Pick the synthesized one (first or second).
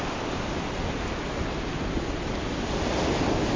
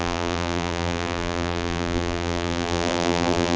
second